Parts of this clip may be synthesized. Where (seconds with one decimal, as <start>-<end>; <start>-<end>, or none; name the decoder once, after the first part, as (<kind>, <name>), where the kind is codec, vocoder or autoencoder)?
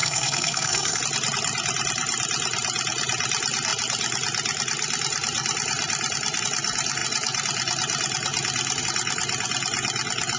0.0-1.0 (codec, SNAC)